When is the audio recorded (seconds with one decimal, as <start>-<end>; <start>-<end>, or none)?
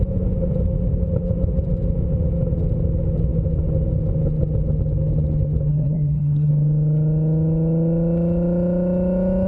0.0-5.7; 6.5-9.5